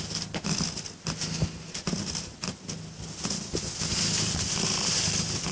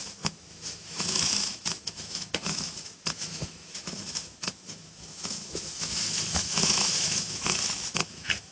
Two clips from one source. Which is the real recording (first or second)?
first